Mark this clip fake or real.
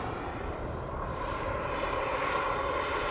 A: fake